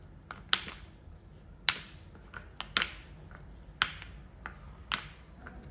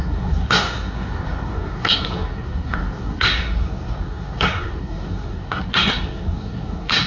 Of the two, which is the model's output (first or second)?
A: second